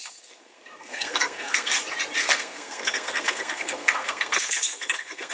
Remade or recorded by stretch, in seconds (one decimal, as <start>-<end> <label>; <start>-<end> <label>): 0.0-1.8 remade; 1.8-2.2 recorded; 2.2-5.3 remade

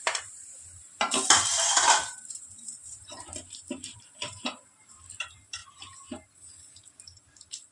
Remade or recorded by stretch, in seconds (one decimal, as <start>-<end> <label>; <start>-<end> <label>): 0.0-7.7 remade

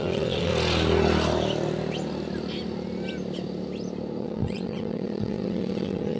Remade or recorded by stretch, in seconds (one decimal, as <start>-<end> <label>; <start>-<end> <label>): 0.0-0.5 remade; 0.5-4.2 recorded; 4.2-6.2 remade

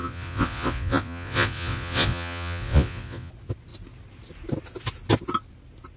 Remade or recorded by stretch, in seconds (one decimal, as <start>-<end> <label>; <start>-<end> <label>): 0.0-3.3 remade; 3.3-6.0 recorded

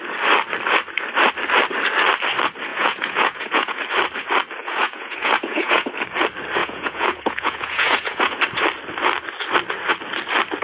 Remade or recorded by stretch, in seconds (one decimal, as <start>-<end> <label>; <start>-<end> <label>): 0.0-2.7 recorded; 2.7-3.8 remade; 3.8-4.6 recorded; 4.6-5.9 remade; 5.9-6.6 recorded; 6.6-8.4 remade; 8.4-10.6 recorded

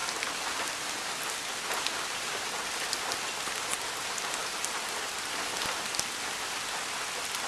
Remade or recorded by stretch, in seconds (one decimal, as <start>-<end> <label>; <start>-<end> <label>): 0.0-7.5 recorded

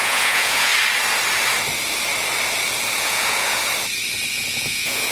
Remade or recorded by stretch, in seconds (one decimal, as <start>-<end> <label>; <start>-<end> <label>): 0.0-0.7 remade; 0.7-3.0 recorded; 3.0-3.6 remade; 3.6-4.3 recorded; 4.3-5.1 remade

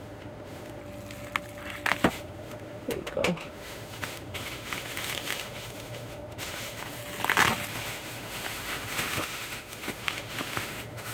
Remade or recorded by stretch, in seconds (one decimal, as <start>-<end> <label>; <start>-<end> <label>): 0.0-0.8 remade; 0.8-2.1 recorded; 2.1-7.0 remade; 7.0-7.7 recorded; 7.7-11.1 remade